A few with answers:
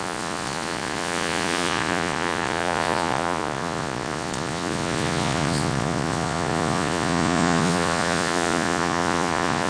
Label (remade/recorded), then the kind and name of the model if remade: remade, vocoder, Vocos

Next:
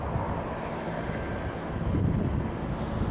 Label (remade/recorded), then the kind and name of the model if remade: recorded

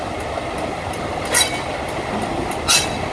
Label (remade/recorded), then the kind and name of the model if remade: recorded